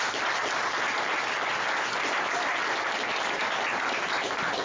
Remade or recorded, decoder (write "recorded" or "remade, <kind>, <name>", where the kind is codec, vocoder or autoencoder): recorded